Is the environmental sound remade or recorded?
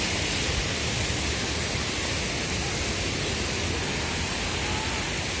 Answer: recorded